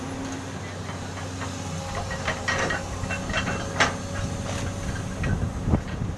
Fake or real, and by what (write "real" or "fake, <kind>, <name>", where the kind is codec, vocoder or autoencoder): real